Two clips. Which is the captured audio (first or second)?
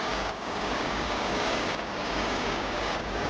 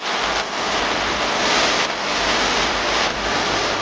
second